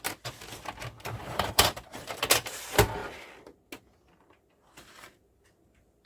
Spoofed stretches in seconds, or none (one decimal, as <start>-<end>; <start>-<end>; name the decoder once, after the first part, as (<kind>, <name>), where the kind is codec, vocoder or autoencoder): 1.2-2.2 (vocoder, BigVGAN v2)